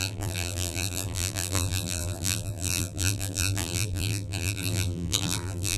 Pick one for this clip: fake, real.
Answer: fake